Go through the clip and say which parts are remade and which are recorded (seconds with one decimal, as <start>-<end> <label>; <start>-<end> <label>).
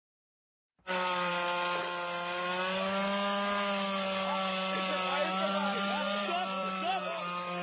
0.0-0.5 recorded; 0.5-1.8 remade; 1.8-5.2 recorded; 5.2-6.9 remade; 6.9-7.6 recorded